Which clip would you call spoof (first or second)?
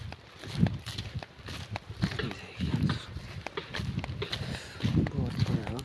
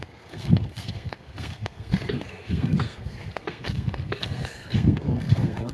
second